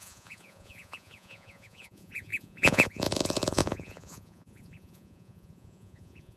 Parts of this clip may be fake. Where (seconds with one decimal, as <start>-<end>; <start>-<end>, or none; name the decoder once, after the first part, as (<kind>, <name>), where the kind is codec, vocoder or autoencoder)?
0.0-6.4 (vocoder, Vocos)